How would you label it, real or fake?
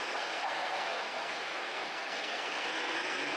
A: fake